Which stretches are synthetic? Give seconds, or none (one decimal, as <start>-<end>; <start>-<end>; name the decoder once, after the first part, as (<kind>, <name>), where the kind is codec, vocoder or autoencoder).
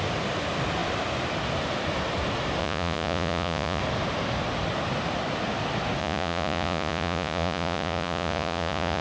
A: 2.6-3.8 (vocoder, Vocos); 6.0-9.0